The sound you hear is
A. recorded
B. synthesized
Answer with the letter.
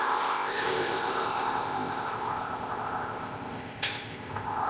B